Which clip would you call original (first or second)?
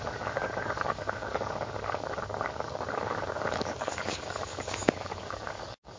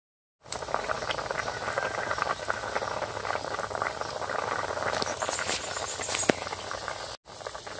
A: second